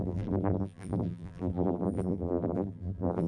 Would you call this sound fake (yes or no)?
yes